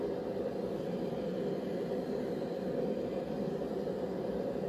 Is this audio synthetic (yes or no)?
yes